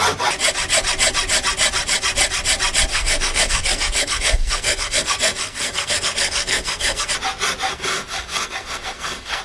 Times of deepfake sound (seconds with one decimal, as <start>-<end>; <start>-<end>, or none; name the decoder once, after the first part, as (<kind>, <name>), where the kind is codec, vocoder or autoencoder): 2.9-7.1 (codec, SNAC); 7.7-9.4